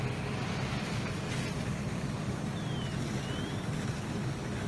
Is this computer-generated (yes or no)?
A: no